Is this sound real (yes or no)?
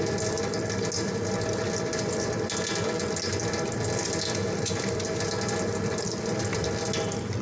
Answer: yes